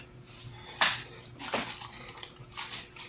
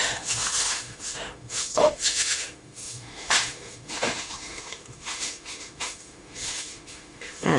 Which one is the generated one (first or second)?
second